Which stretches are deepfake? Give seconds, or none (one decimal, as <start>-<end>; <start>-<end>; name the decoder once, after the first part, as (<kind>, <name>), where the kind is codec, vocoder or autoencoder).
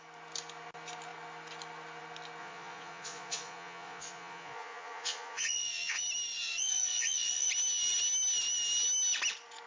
2.4-6.0 (vocoder, Vocos); 6.4-7.5